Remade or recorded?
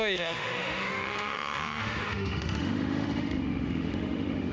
remade